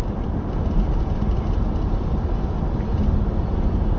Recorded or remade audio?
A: recorded